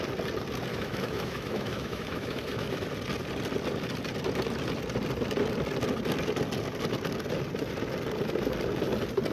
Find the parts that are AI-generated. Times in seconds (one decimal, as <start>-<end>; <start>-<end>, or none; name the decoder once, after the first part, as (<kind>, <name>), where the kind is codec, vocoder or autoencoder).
0.7-2.8 (autoencoder, DAC-VAE)